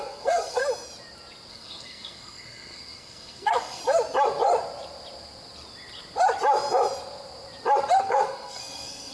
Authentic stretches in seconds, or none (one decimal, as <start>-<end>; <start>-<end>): 0.6-1.5; 3.8-8.0